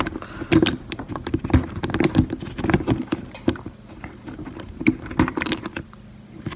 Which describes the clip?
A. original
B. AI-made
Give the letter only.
A